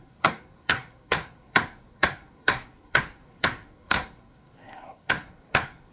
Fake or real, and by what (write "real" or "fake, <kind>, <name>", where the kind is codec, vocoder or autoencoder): fake, codec, SNAC